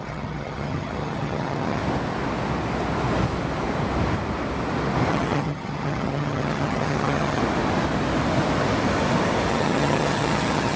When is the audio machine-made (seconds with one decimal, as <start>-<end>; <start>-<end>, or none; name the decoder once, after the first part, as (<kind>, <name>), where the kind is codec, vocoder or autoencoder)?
0.0-1.8 (vocoder, HiFi-GAN); 5.1-7.4; 9.5-10.8